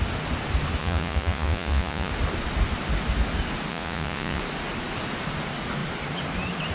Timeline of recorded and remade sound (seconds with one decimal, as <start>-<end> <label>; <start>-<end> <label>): 0.0-0.8 recorded; 0.8-2.1 remade; 2.1-3.7 recorded; 3.7-4.4 remade; 4.4-6.7 recorded